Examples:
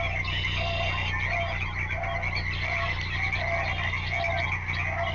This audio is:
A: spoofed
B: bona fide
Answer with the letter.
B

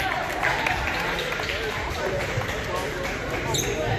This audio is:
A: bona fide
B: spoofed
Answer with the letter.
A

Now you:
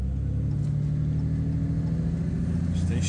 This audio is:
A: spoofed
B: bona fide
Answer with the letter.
B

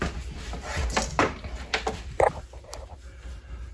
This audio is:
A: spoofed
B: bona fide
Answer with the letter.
B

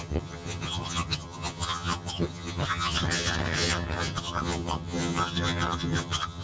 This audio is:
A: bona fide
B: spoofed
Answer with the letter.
B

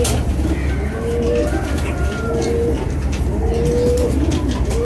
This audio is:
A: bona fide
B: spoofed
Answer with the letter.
A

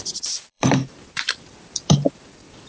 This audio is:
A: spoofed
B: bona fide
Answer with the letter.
A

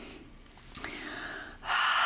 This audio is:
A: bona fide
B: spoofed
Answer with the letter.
A